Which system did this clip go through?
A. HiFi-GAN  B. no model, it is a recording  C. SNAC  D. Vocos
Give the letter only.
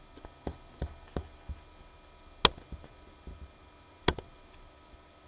B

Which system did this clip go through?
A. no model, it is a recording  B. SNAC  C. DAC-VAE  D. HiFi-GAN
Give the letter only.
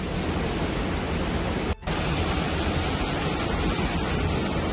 A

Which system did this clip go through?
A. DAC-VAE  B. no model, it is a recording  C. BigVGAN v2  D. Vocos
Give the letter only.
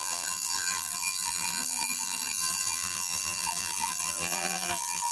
C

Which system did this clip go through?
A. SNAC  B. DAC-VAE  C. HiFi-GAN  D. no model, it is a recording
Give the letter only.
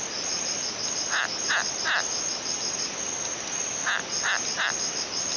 D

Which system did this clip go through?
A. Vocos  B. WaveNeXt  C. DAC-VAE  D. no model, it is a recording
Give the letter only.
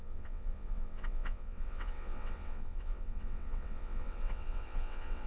B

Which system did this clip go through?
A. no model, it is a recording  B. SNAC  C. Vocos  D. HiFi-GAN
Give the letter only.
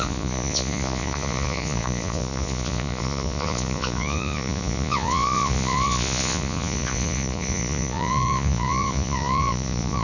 C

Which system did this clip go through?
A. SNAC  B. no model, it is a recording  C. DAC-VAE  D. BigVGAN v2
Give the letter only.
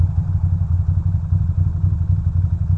B